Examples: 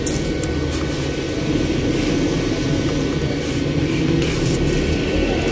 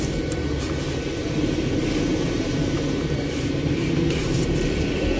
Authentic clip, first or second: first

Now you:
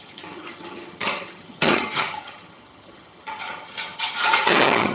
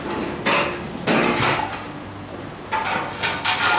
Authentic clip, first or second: second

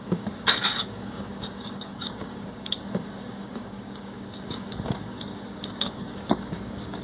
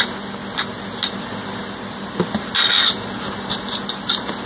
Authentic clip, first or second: second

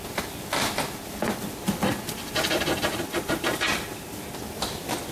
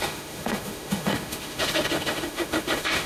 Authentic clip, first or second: first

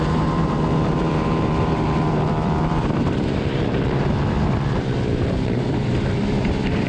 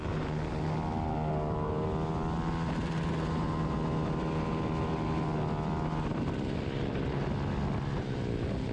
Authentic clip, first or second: second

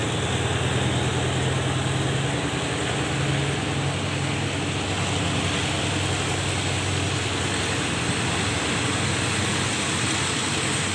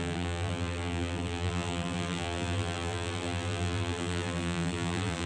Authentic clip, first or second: first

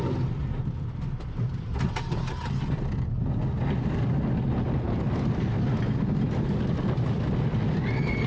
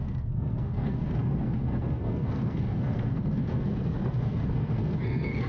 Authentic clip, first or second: first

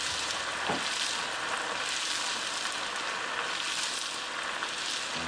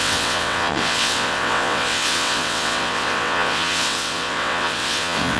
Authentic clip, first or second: first